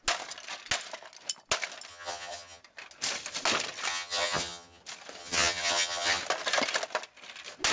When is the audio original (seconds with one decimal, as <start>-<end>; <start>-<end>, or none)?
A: 0.0-1.9; 2.6-3.9; 4.8-5.2; 6.2-7.7

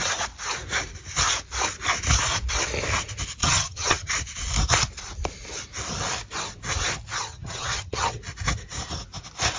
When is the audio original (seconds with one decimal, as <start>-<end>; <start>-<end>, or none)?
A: 0.0-3.4; 4.1-7.3; 8.2-9.6